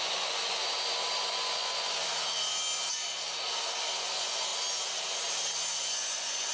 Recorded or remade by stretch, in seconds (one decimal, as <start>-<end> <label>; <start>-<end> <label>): 0.0-0.6 remade; 0.6-1.2 recorded; 1.2-2.1 remade; 2.1-4.0 recorded; 4.0-4.5 remade; 4.5-5.8 recorded; 5.8-6.5 remade